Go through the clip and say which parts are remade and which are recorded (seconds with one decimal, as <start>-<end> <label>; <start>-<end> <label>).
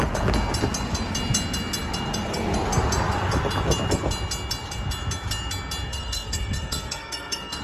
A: 0.0-5.9 recorded; 5.9-7.6 remade